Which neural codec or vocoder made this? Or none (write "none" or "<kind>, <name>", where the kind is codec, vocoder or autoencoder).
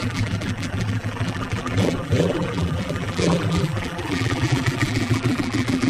vocoder, BigVGAN v2